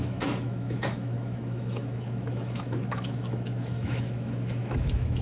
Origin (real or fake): fake